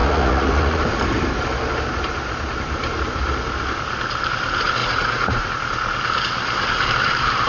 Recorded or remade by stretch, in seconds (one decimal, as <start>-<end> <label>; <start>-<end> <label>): 0.0-0.8 remade; 0.8-4.8 recorded; 4.8-5.5 remade; 5.5-7.5 recorded